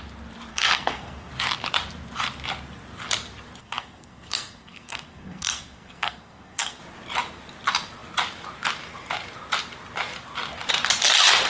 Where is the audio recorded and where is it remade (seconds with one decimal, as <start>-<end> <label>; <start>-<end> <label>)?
0.0-0.5 recorded; 0.5-1.3 remade; 1.3-3.6 recorded; 3.6-6.8 remade; 6.8-11.5 recorded